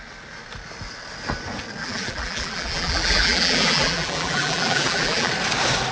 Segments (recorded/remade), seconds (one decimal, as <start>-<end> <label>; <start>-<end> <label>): 0.0-1.8 recorded; 1.8-5.3 remade; 5.3-5.9 recorded